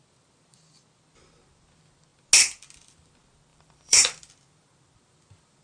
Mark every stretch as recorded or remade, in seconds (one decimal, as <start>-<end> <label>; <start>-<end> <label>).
0.0-3.5 recorded; 3.5-4.3 remade; 4.3-5.6 recorded